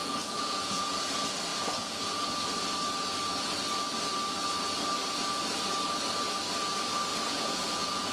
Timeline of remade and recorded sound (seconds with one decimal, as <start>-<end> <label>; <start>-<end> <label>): 0.0-1.0 remade; 1.0-1.5 recorded; 1.5-2.3 remade; 2.3-7.1 recorded; 7.1-8.1 remade